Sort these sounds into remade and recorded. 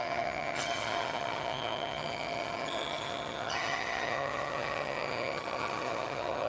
remade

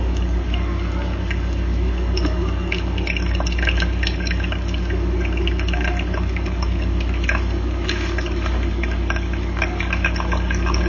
remade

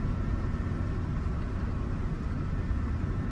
recorded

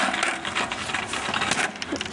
recorded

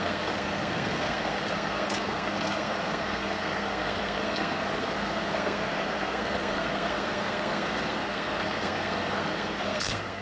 remade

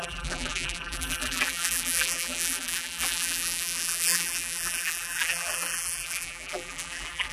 remade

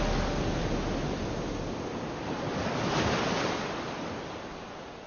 recorded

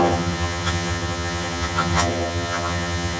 remade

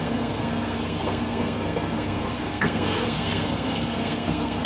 remade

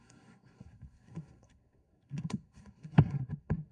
remade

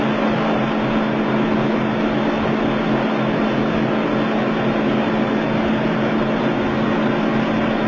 recorded